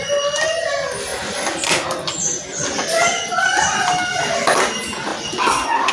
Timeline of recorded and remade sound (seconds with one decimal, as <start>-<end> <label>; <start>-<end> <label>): 0.0-5.9 recorded